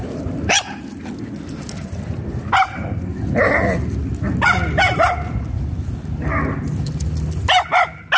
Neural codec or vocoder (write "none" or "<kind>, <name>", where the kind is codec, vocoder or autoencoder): none